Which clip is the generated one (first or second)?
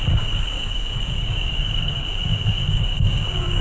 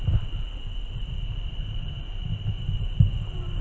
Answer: first